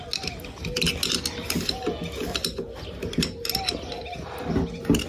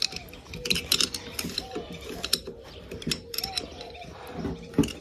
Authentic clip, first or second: first